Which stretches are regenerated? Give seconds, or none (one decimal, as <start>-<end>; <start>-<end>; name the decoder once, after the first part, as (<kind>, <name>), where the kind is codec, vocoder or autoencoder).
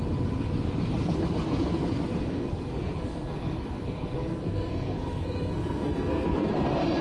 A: 2.3-6.5 (codec, SNAC)